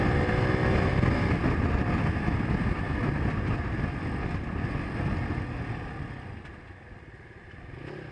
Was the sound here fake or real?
real